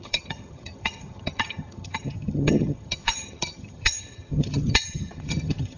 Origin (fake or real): fake